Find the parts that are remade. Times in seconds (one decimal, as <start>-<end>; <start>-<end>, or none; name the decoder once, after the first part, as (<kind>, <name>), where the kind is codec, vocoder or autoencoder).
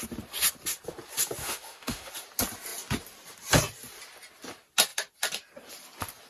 1.4-2.1 (autoencoder, DAC-VAE)